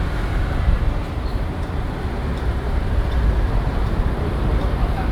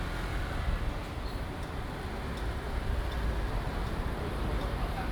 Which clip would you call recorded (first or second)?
second